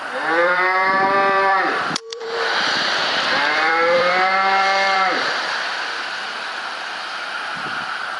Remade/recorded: remade